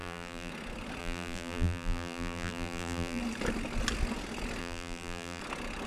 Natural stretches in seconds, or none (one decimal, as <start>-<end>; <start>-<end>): 0.5-1.0; 3.2-4.6; 5.4-5.9